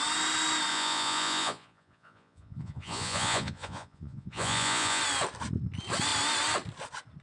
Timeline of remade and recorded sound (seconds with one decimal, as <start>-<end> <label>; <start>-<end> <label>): 0.0-0.7 recorded; 0.7-5.0 remade; 5.0-7.2 recorded